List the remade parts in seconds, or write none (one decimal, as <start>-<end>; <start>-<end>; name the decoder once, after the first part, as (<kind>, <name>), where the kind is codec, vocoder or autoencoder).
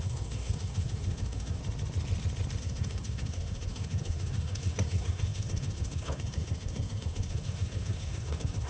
0.0-1.6 (codec, SNAC); 2.6-8.7